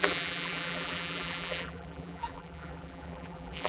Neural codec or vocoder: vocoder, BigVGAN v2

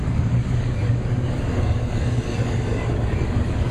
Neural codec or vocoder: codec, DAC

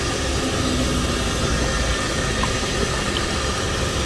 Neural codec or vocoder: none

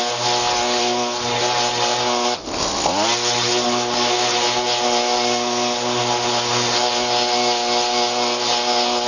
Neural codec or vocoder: none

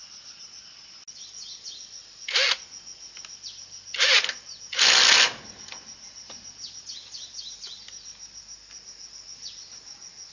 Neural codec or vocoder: none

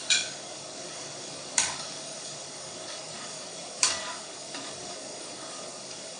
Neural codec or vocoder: codec, DAC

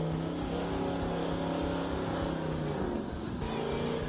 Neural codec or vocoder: none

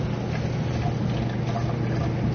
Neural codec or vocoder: none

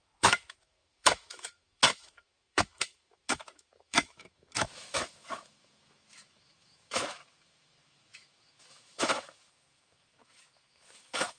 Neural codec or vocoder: autoencoder, DAC-VAE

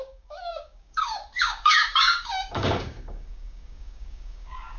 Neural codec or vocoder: codec, DAC